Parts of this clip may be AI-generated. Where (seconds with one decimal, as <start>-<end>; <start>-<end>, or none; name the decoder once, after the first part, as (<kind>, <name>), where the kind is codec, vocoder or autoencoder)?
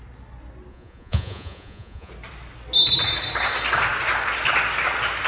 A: 0.7-2.1 (vocoder, Vocos)